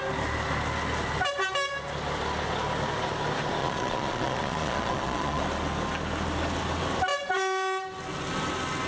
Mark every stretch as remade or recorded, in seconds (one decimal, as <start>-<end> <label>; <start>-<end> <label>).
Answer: 0.0-3.6 recorded; 3.6-5.4 remade; 5.4-8.9 recorded

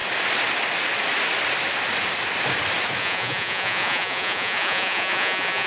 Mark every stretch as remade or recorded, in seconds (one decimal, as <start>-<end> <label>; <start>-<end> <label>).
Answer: 0.0-3.0 recorded; 3.0-5.7 remade

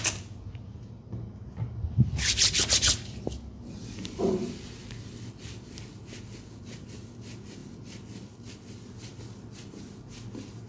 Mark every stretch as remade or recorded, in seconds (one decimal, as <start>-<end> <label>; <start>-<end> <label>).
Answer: 0.0-3.8 recorded; 3.8-4.3 remade; 4.3-10.7 recorded